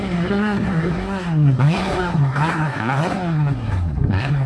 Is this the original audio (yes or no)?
no